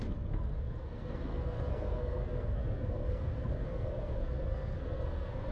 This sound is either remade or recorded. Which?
remade